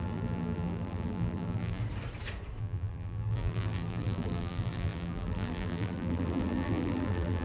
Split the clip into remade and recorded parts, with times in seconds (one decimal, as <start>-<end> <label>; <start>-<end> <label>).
0.0-1.8 remade; 1.8-2.6 recorded; 2.6-7.4 remade